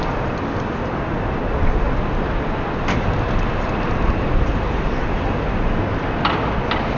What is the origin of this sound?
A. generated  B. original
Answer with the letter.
B